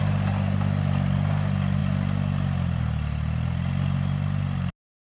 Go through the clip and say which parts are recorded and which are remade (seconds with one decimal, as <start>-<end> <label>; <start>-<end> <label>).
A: 0.0-5.2 recorded